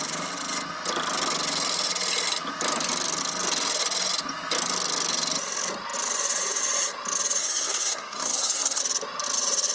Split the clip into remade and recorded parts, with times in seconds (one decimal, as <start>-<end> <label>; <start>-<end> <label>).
0.0-7.4 recorded; 7.4-8.8 remade; 8.8-9.7 recorded